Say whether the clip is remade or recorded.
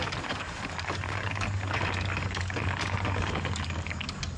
remade